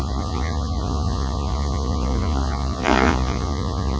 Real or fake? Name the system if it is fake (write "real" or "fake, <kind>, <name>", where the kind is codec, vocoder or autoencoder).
fake, vocoder, Vocos